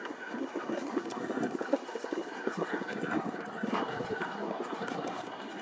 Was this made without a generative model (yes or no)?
no